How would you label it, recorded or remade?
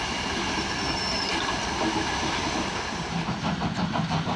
recorded